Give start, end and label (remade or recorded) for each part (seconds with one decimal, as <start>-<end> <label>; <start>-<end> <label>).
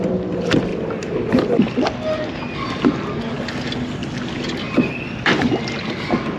0.0-6.4 recorded